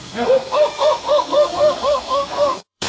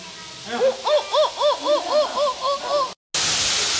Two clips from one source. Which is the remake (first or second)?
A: first